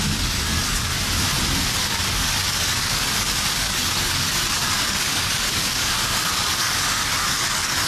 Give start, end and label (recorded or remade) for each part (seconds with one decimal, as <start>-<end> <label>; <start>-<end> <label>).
0.0-0.9 remade; 0.9-1.8 recorded; 1.8-7.9 remade